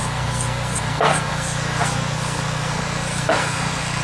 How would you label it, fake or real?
fake